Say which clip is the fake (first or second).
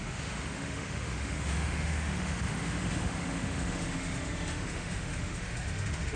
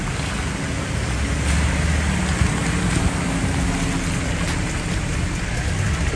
first